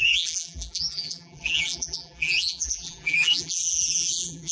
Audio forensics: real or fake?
fake